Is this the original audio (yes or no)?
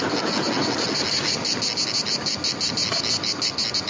yes